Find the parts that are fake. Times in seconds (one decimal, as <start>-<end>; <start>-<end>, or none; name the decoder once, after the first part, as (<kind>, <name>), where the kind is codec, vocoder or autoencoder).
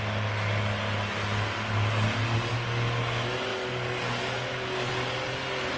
none